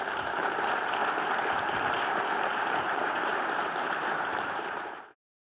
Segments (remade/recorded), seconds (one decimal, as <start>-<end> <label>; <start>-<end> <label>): 0.0-1.0 remade; 1.0-1.6 recorded; 1.6-5.6 remade